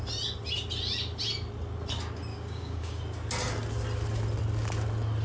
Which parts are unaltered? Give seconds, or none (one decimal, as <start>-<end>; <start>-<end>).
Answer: 0.0-2.3; 3.0-5.2